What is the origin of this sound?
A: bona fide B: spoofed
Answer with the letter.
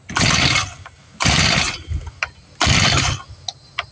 A